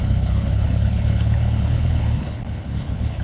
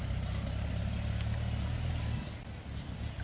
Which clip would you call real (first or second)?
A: second